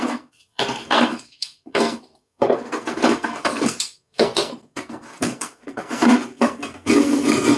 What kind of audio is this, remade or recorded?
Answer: remade